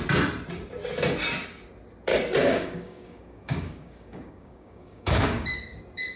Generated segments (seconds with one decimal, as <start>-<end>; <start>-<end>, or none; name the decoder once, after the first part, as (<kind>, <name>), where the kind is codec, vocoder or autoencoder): 2.1-5.8 (codec, DAC)